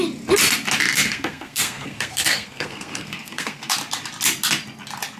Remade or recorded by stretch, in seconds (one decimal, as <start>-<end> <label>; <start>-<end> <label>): 0.0-0.9 recorded; 0.9-3.7 remade; 3.7-5.2 recorded